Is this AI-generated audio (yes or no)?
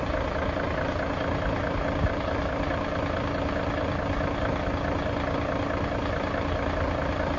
no